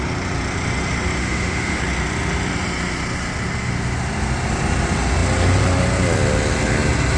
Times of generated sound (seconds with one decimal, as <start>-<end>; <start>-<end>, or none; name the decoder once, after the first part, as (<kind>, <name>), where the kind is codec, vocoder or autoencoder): 1.2-1.8 (autoencoder, DAC-VAE)